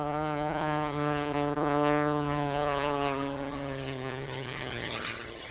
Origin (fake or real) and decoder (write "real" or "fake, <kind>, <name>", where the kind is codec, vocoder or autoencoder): fake, vocoder, HiFi-GAN